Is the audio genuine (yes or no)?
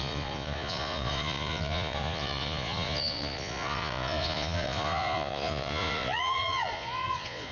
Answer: no